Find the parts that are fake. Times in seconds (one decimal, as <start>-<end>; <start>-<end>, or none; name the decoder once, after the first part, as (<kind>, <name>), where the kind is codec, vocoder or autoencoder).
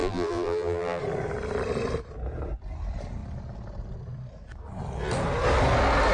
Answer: 0.0-1.0 (vocoder, BigVGAN v2)